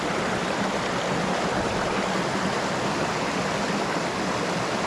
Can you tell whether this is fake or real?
real